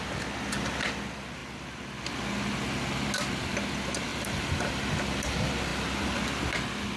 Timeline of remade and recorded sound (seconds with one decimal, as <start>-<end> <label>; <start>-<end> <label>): 0.0-4.1 recorded; 4.1-4.7 remade; 4.7-7.0 recorded